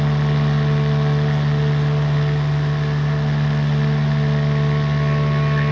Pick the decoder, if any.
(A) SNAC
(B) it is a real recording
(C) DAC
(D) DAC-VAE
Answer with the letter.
B